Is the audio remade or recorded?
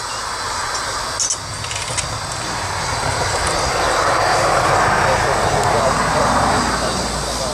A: recorded